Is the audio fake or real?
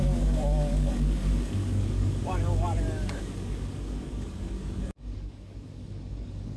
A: fake